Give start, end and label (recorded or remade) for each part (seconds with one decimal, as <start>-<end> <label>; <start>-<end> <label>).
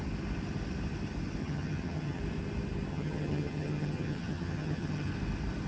0.0-1.4 recorded; 1.4-2.2 remade; 2.2-2.9 recorded; 2.9-5.1 remade; 5.1-5.7 recorded